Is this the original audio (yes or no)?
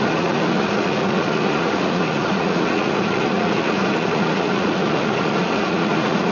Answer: no